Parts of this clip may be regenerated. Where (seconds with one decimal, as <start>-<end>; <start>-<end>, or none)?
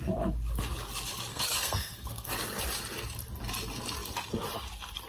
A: 1.3-2.3